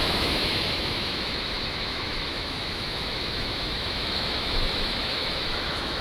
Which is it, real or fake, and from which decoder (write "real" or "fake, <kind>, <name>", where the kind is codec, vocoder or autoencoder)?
fake, autoencoder, DAC-VAE